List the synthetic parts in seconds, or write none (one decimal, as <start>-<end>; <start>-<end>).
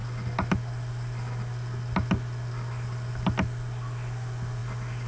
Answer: none